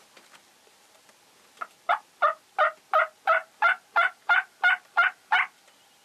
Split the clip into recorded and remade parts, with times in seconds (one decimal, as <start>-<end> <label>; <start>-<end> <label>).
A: 0.0-3.4 recorded; 3.4-5.6 remade; 5.6-6.0 recorded